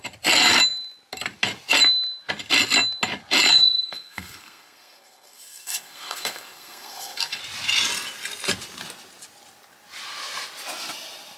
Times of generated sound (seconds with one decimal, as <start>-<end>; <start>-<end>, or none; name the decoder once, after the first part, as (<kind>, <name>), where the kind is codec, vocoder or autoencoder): 3.5-7.4 (codec, SNAC)